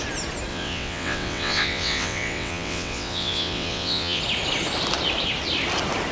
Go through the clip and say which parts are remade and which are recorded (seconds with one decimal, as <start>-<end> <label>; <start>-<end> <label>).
0.0-0.5 recorded; 0.5-4.2 remade; 4.2-6.1 recorded